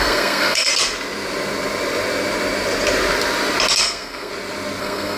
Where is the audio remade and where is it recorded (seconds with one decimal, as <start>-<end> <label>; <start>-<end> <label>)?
0.0-0.7 remade; 0.7-3.8 recorded; 3.8-4.3 remade; 4.3-4.8 recorded; 4.8-5.2 remade

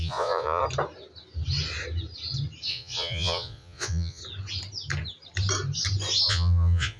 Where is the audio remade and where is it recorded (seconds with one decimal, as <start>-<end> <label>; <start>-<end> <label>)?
0.0-0.6 remade; 0.6-2.7 recorded; 2.7-4.2 remade; 4.2-6.3 recorded; 6.3-7.0 remade